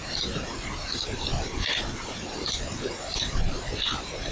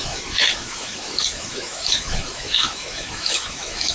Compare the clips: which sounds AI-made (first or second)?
second